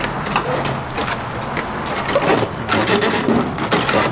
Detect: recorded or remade recorded